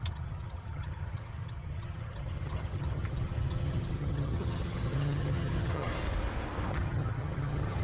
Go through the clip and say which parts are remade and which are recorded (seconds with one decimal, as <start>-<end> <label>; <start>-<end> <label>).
0.0-5.9 remade; 5.9-6.7 recorded; 6.7-7.8 remade

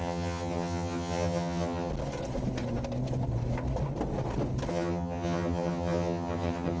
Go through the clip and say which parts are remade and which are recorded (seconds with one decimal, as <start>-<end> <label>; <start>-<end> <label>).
0.0-1.9 remade; 1.9-4.7 recorded; 4.7-6.8 remade

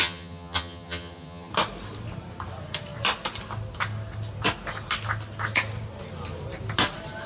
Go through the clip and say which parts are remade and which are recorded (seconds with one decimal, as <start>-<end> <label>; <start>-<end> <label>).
0.0-1.5 remade; 1.5-7.3 recorded

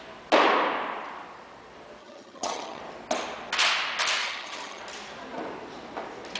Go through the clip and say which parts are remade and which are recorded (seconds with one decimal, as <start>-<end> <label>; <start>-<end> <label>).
0.0-2.0 recorded; 2.0-2.8 remade; 2.8-4.2 recorded; 4.2-4.8 remade; 4.8-6.4 recorded